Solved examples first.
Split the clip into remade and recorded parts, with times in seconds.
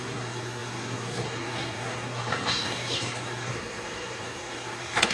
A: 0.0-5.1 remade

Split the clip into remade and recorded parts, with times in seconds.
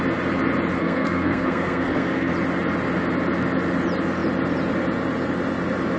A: 0.0-0.8 recorded; 0.8-2.3 remade; 2.3-6.0 recorded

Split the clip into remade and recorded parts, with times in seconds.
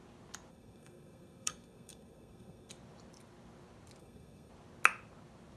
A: 0.0-0.5 recorded; 0.5-2.7 remade; 2.7-4.0 recorded; 4.0-4.5 remade; 4.5-5.6 recorded